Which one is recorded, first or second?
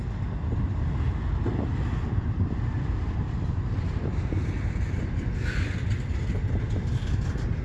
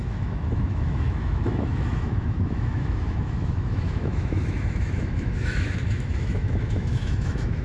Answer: first